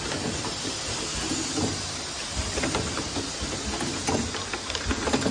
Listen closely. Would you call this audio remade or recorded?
recorded